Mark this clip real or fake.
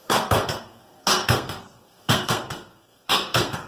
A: fake